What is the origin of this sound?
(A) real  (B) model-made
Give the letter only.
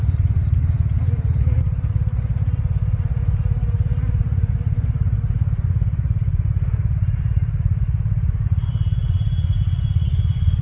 A